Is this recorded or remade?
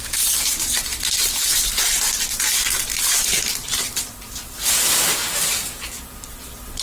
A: remade